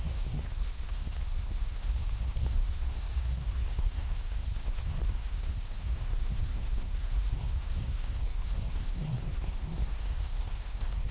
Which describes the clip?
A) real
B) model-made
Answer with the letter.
B